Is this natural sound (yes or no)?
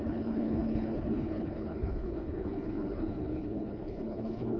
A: no